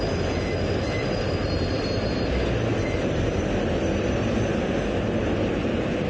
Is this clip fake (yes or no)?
no